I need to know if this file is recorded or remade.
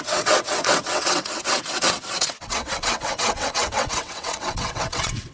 remade